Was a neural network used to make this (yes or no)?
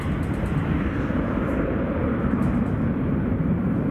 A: no